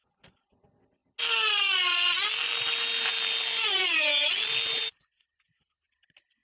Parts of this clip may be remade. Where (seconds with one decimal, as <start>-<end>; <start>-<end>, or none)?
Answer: none